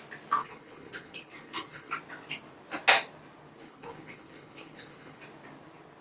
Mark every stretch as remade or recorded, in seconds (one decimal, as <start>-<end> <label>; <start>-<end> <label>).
0.0-0.4 recorded; 0.4-1.9 remade; 1.9-3.6 recorded; 3.6-5.2 remade; 5.2-6.0 recorded